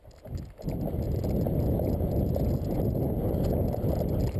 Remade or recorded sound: recorded